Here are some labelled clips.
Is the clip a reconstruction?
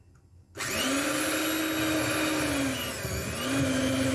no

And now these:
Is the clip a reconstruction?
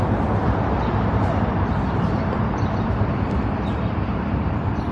yes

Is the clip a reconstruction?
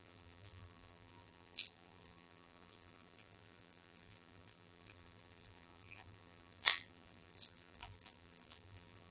yes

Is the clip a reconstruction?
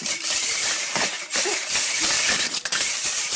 yes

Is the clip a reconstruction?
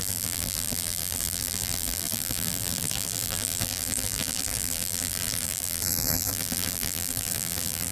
yes